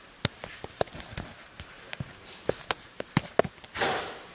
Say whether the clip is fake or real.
real